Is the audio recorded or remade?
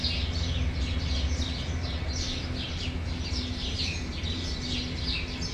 recorded